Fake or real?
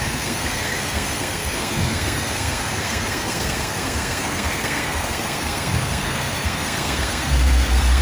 fake